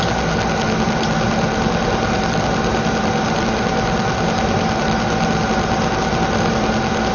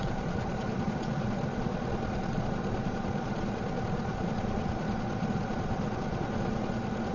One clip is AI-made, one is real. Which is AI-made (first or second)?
second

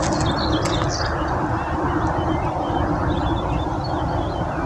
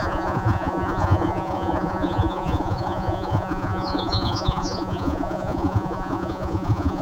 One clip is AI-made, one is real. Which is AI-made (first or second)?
second